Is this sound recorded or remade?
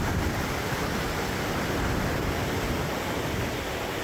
remade